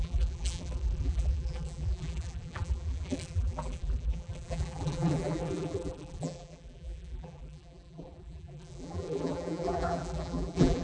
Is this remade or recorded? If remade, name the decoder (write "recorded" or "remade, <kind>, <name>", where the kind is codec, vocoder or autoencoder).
remade, vocoder, BigVGAN v2